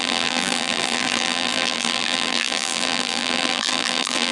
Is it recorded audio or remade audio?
remade